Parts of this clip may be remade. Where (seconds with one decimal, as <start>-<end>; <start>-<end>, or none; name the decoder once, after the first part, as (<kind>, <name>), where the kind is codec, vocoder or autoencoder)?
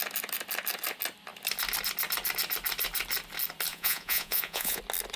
3.7-4.8 (vocoder, Vocos)